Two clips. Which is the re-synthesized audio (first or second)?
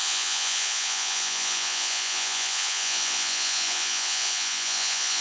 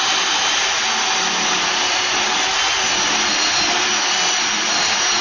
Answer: first